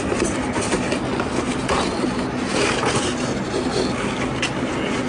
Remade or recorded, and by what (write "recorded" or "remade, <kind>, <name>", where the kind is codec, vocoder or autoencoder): recorded